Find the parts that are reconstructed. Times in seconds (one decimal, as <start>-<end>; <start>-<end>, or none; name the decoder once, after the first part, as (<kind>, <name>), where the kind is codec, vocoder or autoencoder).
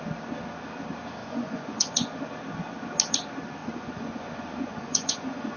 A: 1.2-2.2 (vocoder, Vocos); 3.6-5.6